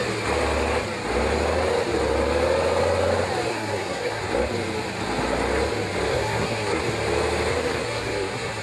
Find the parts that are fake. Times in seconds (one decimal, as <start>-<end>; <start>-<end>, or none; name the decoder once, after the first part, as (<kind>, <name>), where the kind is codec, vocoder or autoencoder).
3.5-4.3 (codec, SNAC); 6.1-6.8; 7.5-8.6